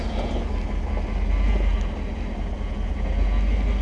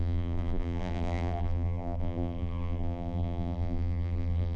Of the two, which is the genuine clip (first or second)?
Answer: first